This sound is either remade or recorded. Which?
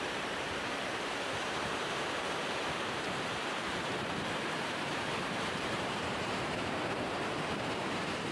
remade